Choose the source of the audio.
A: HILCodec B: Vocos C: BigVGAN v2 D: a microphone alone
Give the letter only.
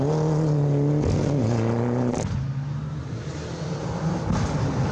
D